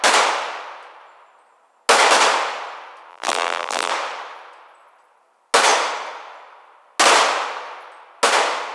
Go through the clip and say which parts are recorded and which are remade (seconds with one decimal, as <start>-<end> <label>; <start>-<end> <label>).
0.0-3.1 recorded; 3.1-3.9 remade; 3.9-8.7 recorded